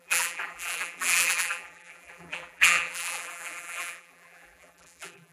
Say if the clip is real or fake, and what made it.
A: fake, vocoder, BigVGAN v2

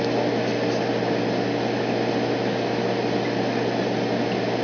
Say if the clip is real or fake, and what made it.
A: real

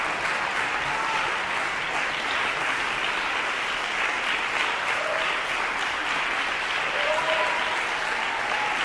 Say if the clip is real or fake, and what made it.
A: real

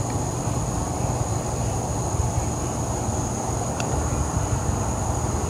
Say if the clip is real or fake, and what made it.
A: real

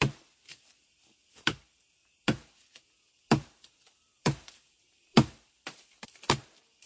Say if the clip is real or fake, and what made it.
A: fake, vocoder, BigVGAN v2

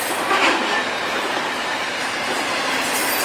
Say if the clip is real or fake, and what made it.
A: fake, vocoder, BigVGAN v2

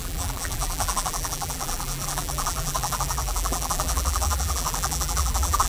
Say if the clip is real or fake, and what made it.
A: fake, vocoder, BigVGAN v2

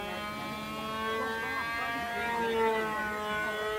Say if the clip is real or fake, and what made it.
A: real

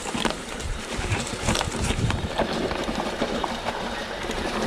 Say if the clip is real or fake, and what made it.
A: fake, vocoder, BigVGAN v2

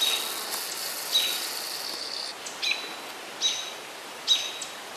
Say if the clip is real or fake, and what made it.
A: real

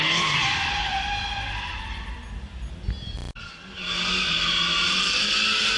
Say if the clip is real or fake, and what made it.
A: real